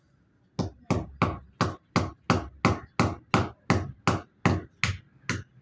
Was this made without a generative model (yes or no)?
yes